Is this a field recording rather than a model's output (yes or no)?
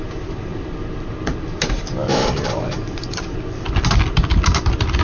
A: no